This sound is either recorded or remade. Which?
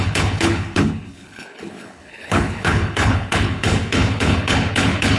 remade